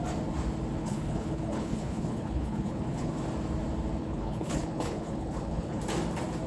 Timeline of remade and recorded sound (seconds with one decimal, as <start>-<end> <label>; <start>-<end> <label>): 0.0-0.8 recorded; 0.8-3.1 remade; 3.1-4.0 recorded; 4.0-5.8 remade; 5.8-6.5 recorded